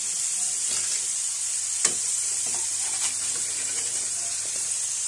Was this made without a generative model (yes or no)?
yes